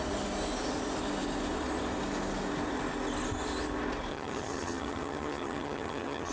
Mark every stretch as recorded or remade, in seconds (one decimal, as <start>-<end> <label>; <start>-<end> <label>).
0.0-4.1 recorded; 4.1-6.3 remade